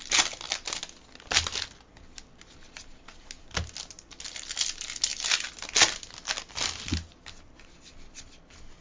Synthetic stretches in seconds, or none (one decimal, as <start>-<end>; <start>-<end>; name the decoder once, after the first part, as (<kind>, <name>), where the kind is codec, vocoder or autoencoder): none